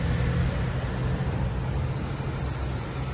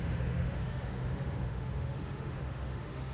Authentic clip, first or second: first